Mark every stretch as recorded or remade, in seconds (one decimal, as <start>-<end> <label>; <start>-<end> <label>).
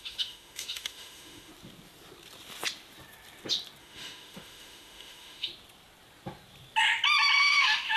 0.0-1.5 remade; 1.5-3.8 recorded; 3.8-5.5 remade; 5.5-7.4 recorded; 7.4-8.0 remade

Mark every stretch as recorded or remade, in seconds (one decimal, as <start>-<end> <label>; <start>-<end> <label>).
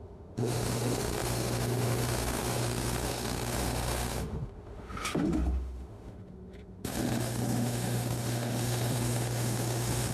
0.0-10.1 remade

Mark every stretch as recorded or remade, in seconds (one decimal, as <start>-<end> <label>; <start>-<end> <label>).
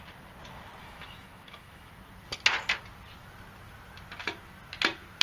0.0-0.8 recorded; 0.8-1.9 remade; 1.9-5.2 recorded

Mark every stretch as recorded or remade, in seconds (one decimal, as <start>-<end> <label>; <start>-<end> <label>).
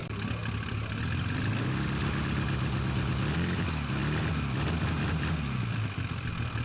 0.0-6.6 recorded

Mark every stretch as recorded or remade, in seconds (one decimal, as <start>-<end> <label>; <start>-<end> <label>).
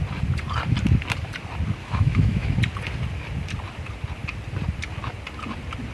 0.0-1.8 recorded; 1.8-2.6 remade; 2.6-5.9 recorded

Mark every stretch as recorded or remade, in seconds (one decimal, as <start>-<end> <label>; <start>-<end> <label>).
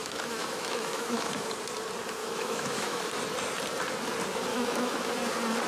0.0-1.5 remade; 1.5-2.2 recorded; 2.2-3.0 remade; 3.0-4.5 recorded; 4.5-5.1 remade; 5.1-5.7 recorded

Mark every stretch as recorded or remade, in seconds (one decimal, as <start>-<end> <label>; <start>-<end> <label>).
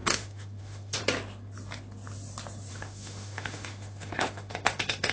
0.0-1.0 remade; 1.0-2.7 recorded; 2.7-5.1 remade